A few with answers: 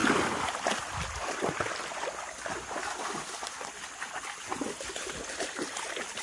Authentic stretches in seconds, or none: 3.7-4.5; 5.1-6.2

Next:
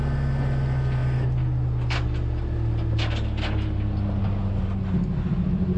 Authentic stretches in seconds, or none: 0.0-5.8

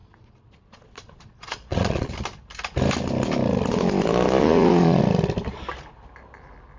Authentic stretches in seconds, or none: 2.1-4.4; 5.0-6.8

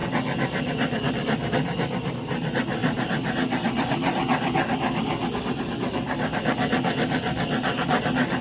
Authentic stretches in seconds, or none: 0.0-8.4

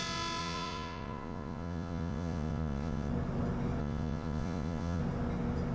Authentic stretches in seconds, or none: 0.0-0.4; 3.1-3.8; 5.0-5.7

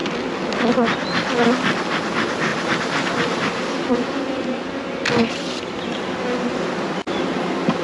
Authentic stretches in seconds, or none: 0.0-7.8

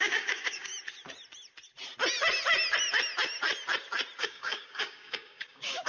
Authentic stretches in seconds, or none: 0.7-4.2

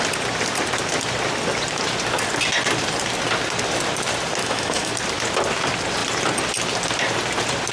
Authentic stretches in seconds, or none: 0.0-4.4; 4.9-7.7